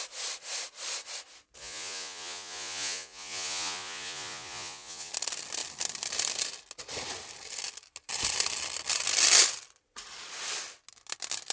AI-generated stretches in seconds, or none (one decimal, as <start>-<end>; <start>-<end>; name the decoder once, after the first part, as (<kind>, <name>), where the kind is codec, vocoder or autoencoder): 1.6-5.1 (vocoder, Vocos)